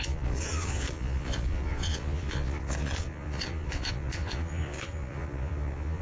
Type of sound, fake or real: fake